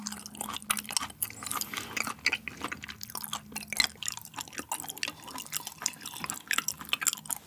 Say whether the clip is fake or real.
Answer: real